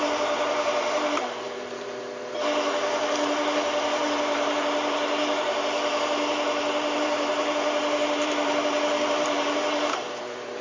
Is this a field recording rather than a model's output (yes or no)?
no